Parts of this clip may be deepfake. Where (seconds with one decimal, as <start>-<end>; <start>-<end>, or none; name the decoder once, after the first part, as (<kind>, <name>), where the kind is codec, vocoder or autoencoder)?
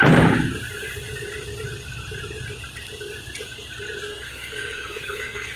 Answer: 4.1-5.6 (codec, SNAC)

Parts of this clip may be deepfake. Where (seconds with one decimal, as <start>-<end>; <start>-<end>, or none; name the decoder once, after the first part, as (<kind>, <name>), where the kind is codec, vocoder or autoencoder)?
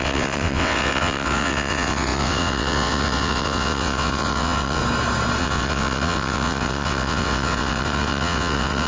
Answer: 0.0-4.8 (vocoder, WaveNeXt); 5.4-8.9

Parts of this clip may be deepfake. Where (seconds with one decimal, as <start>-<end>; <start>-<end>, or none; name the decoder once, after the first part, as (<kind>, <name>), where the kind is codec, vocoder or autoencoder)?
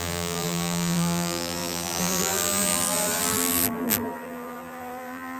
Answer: 0.0-5.4 (vocoder, BigVGAN v2)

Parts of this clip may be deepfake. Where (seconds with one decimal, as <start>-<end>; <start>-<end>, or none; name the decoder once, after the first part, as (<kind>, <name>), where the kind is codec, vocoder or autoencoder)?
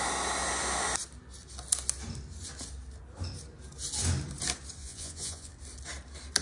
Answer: 4.8-5.5 (vocoder, Vocos)